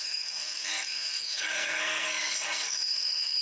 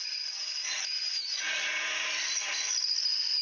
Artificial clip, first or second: first